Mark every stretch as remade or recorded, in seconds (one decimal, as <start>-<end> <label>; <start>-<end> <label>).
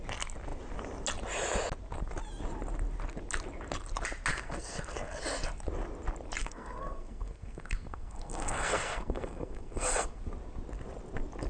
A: 0.0-4.3 recorded; 4.3-5.2 remade; 5.2-6.4 recorded; 6.4-10.2 remade; 10.2-11.5 recorded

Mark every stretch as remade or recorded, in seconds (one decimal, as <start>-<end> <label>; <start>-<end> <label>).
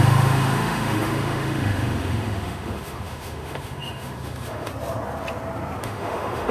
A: 0.0-4.7 remade; 4.7-5.8 recorded; 5.8-6.5 remade